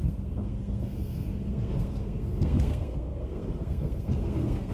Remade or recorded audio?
remade